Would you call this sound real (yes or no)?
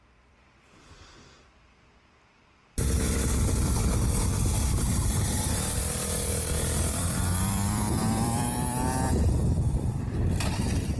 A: no